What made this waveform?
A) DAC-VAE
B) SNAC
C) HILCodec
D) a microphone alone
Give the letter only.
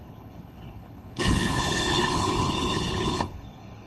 C